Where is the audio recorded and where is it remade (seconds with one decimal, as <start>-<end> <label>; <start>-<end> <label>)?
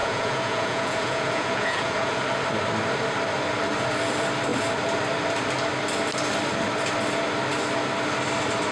0.0-2.2 remade; 2.2-8.7 recorded